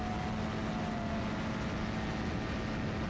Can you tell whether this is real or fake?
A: real